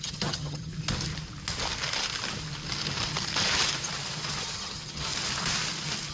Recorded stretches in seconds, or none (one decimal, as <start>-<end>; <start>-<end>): 0.7-4.4; 5.1-6.1

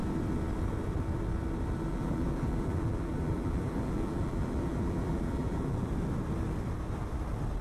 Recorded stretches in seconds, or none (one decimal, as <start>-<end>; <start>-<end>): 0.0-1.9; 5.9-7.6